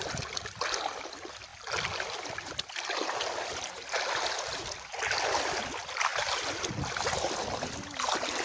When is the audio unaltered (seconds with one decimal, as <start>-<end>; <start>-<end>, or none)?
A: 0.0-8.4